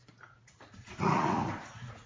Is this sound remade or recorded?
remade